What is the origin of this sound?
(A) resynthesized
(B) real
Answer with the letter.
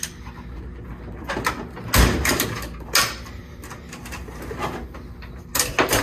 B